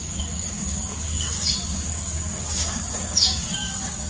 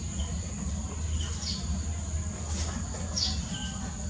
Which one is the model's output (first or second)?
first